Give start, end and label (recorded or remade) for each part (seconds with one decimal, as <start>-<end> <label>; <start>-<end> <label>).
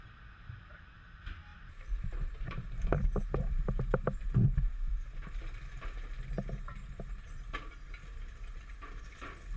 0.0-1.5 recorded; 1.5-4.9 remade; 4.9-9.6 recorded